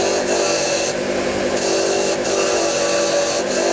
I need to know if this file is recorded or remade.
recorded